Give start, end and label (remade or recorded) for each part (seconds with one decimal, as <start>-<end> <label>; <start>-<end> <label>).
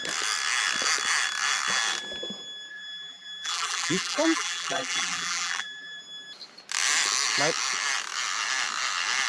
0.0-2.7 recorded; 2.7-6.0 remade; 6.0-9.3 recorded